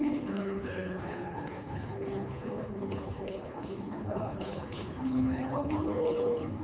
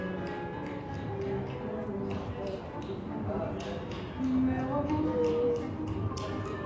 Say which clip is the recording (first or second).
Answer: second